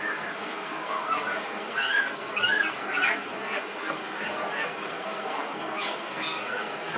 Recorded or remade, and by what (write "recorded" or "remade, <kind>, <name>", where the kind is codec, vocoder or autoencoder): remade, codec, SNAC